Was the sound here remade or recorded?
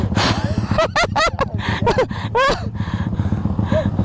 recorded